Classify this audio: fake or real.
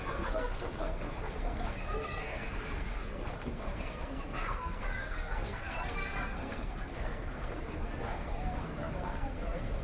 fake